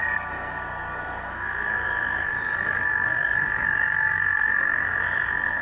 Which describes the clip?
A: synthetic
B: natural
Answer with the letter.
A